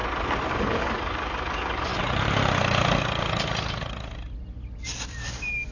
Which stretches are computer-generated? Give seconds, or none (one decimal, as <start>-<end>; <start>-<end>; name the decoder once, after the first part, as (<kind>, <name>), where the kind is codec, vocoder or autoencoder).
0.5-1.9 (codec, DAC); 5.2-5.7